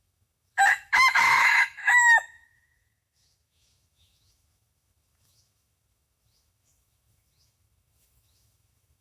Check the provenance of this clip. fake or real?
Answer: fake